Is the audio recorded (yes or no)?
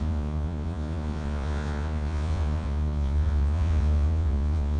no